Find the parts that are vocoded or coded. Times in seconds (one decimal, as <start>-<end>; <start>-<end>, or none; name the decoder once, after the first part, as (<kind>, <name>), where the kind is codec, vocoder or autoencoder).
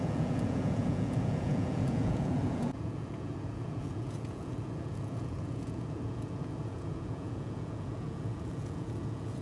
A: 0.0-9.4 (vocoder, Vocos)